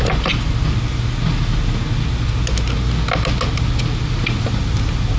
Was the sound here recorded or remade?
recorded